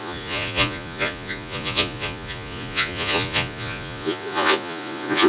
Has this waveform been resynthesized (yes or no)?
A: yes